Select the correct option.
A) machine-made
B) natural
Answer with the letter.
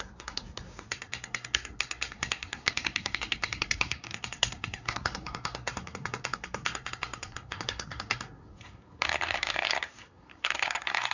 A